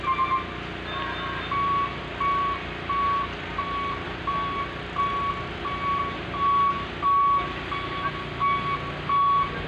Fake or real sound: real